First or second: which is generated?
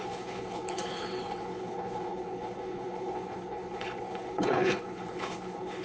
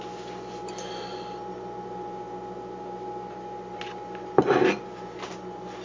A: first